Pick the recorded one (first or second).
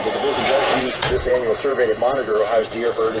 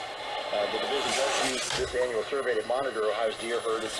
second